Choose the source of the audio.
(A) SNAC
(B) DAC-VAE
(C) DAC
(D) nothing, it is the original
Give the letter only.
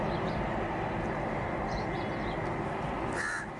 D